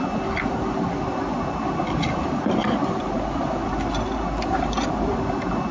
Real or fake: real